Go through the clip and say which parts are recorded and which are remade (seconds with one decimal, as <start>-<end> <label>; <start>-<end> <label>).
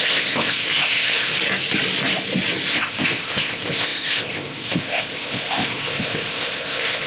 0.0-1.3 remade; 1.3-2.7 recorded; 2.7-7.1 remade